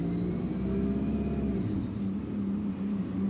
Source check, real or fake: real